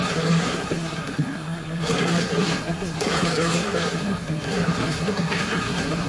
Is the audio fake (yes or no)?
yes